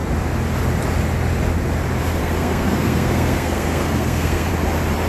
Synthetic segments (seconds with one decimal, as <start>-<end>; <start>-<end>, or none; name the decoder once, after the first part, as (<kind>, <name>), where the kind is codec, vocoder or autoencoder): 2.2-4.5 (codec, SNAC)

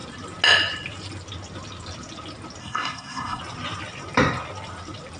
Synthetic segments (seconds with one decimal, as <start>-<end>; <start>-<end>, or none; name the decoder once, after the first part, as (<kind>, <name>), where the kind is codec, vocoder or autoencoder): 2.6-3.4 (codec, SNAC)